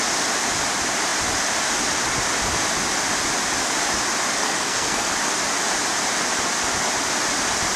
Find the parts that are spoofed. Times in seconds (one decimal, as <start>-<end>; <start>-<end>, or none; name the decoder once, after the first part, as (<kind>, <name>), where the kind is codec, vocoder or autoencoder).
4.4-5.1 (codec, SNAC)